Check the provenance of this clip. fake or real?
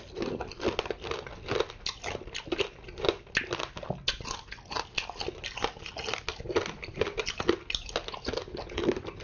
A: real